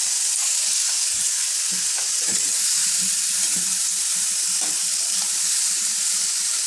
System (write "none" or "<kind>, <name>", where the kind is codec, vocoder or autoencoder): vocoder, BigVGAN v2